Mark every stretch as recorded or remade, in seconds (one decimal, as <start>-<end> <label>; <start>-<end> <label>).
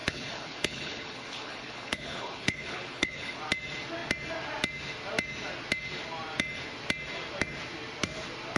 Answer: 0.0-3.4 remade; 3.4-8.6 recorded